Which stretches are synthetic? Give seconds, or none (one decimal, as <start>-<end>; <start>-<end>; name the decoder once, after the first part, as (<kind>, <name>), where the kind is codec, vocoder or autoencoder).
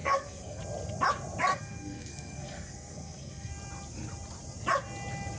0.0-0.6 (codec, SNAC); 1.5-3.5